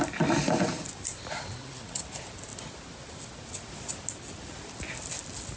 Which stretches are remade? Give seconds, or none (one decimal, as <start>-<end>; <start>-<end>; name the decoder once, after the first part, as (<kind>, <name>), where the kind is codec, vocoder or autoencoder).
none